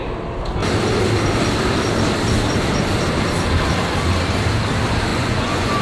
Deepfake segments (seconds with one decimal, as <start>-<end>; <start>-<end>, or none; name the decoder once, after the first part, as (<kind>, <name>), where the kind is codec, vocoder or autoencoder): 5.1-5.8 (vocoder, Vocos)